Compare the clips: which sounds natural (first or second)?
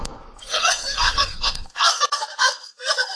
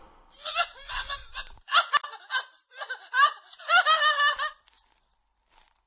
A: second